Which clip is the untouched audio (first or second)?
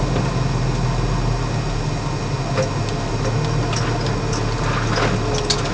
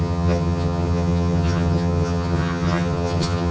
first